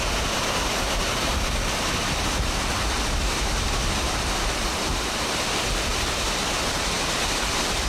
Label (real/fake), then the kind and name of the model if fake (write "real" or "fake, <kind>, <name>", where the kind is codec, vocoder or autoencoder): real